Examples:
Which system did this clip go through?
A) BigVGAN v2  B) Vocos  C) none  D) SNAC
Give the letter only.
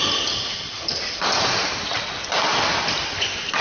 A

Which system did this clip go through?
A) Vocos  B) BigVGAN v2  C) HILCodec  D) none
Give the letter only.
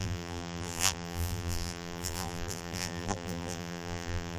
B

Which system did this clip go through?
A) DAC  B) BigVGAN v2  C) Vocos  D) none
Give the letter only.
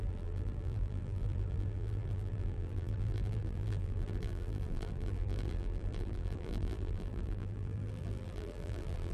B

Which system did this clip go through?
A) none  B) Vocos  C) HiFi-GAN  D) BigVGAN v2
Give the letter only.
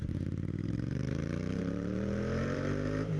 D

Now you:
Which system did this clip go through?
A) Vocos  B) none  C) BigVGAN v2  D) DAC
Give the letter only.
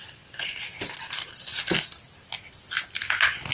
B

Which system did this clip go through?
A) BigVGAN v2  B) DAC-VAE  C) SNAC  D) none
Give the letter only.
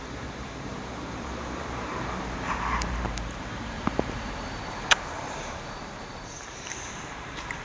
A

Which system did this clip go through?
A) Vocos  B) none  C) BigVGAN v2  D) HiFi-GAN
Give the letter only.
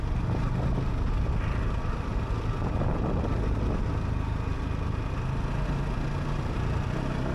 B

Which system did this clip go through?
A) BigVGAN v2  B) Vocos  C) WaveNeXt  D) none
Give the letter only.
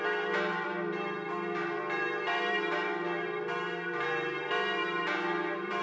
A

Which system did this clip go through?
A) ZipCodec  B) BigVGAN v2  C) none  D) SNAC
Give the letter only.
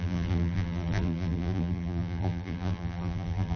B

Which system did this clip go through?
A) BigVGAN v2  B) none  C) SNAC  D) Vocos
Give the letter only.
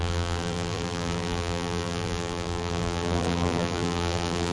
A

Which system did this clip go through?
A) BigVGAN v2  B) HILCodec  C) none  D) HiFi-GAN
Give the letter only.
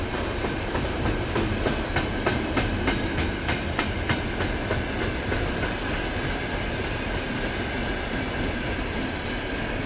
C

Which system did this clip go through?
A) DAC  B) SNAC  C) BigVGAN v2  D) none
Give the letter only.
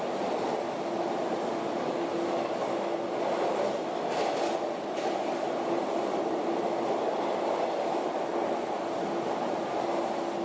D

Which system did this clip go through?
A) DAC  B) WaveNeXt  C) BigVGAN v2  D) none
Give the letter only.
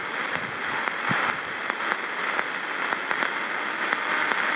D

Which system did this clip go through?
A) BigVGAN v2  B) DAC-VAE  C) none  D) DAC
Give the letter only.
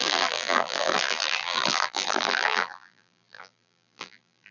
A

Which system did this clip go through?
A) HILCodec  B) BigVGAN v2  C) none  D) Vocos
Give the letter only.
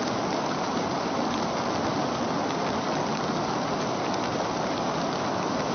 C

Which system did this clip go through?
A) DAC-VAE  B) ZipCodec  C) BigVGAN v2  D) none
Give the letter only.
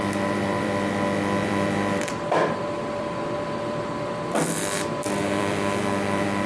C